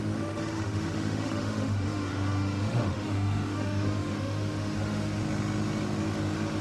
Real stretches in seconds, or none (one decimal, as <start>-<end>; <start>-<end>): 5.2-6.6